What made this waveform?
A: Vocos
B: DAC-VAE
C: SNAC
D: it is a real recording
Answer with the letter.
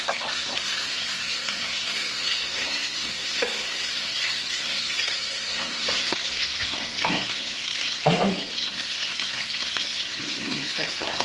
C